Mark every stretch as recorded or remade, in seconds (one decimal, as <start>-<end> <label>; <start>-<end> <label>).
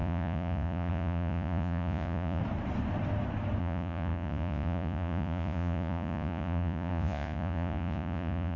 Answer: 0.0-2.4 remade; 2.4-3.6 recorded; 3.6-8.6 remade